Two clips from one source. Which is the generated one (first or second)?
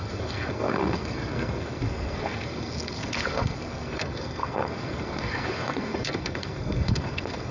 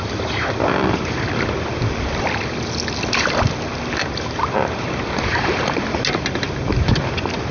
first